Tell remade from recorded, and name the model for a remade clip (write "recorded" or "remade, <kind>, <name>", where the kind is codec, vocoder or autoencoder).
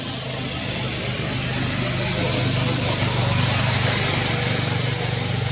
recorded